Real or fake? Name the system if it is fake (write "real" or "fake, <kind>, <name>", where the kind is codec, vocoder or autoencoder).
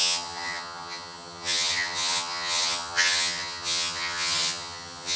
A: fake, vocoder, HiFi-GAN